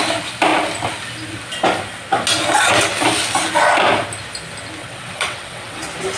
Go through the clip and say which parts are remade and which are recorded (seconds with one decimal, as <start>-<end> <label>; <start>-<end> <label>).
0.0-4.8 recorded; 4.8-5.8 remade; 5.8-6.2 recorded

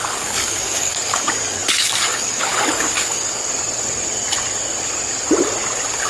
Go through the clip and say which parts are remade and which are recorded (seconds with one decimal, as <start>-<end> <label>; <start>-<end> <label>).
0.0-3.4 remade; 3.4-6.1 recorded

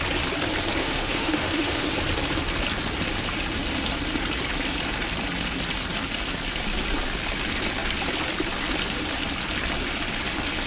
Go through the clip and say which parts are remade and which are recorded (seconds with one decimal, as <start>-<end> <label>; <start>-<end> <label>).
0.0-0.8 recorded; 0.8-1.9 remade; 1.9-10.7 recorded

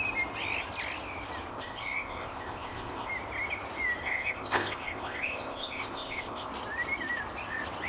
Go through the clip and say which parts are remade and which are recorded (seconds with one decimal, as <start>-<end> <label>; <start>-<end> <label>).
0.0-1.5 recorded; 1.5-3.1 remade; 3.1-4.0 recorded; 4.0-6.5 remade; 6.5-7.9 recorded

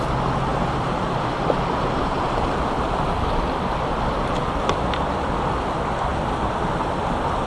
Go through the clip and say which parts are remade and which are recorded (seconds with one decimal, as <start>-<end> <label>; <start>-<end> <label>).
0.0-0.5 recorded; 0.5-2.1 remade; 2.1-6.1 recorded; 6.1-7.5 remade

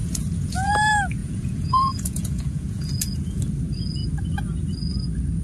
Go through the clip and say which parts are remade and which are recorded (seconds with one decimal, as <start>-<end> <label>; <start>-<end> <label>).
0.0-0.7 remade; 0.7-1.2 recorded; 1.2-3.4 remade; 3.4-5.4 recorded